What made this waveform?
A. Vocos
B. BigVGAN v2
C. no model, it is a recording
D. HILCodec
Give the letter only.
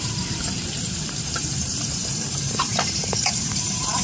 B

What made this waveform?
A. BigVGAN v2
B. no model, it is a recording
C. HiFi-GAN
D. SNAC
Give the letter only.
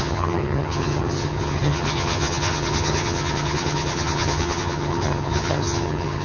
C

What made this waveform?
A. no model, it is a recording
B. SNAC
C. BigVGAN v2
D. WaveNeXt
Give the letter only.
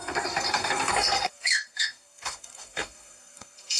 B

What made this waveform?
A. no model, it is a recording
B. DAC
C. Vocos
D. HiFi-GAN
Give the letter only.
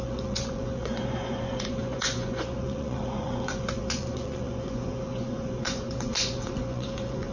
C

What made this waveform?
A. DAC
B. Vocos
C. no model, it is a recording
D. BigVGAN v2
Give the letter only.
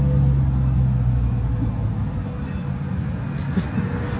C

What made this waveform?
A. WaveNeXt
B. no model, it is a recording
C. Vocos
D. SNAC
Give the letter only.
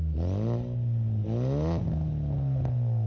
B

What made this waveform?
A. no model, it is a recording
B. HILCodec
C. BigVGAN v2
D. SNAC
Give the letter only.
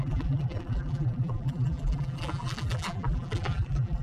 C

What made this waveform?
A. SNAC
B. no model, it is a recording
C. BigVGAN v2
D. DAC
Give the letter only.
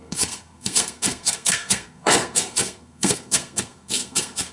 A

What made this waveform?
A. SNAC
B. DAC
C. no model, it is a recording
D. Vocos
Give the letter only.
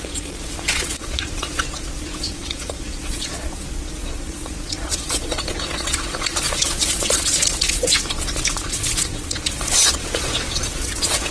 D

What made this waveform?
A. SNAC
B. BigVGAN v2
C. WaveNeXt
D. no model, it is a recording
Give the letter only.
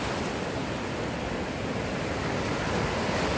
D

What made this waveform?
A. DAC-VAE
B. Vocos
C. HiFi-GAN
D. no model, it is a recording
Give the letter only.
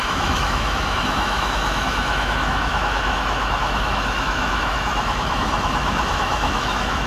A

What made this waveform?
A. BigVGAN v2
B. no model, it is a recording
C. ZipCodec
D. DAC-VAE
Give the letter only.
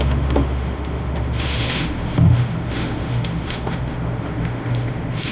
D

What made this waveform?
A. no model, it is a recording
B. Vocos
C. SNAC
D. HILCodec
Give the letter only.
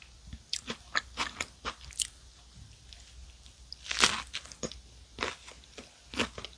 A